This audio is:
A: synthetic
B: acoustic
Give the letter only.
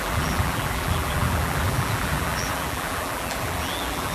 A